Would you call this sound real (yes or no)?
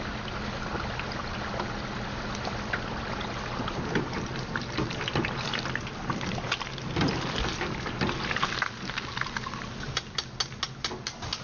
yes